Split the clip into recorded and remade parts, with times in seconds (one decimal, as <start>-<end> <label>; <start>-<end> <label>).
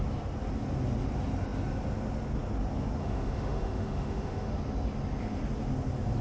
0.0-3.0 recorded; 3.0-4.5 remade; 4.5-6.2 recorded